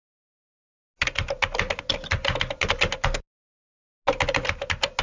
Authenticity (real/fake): real